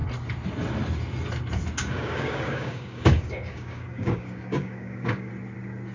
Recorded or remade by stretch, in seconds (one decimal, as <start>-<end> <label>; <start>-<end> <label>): 0.0-1.8 recorded; 1.8-5.3 remade; 5.3-5.9 recorded